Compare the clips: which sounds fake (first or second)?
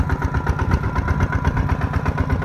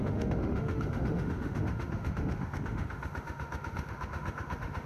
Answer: second